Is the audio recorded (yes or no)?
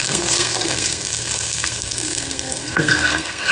no